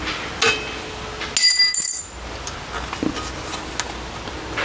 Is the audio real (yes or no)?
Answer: yes